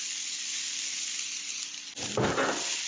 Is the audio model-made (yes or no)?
no